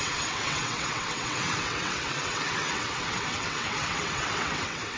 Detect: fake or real fake